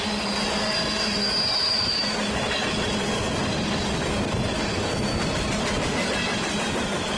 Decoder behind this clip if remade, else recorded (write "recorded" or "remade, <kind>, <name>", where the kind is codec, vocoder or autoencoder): recorded